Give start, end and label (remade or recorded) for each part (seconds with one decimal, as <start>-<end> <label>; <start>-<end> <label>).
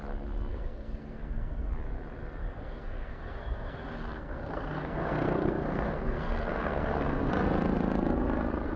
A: 0.0-0.5 recorded; 0.5-1.7 remade; 1.7-2.4 recorded; 2.4-7.3 remade; 7.3-8.8 recorded